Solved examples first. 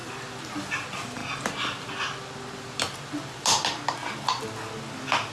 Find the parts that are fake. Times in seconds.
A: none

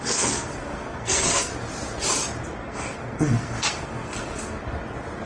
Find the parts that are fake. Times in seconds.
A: 0.0-1.5; 2.6-4.6

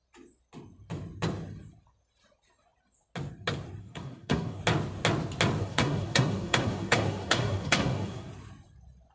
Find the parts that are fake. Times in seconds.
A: 3.8-4.6; 5.6-8.3